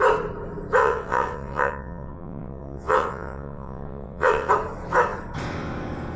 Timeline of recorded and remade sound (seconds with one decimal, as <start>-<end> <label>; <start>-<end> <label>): 0.0-0.8 recorded; 0.8-4.5 remade; 4.5-6.2 recorded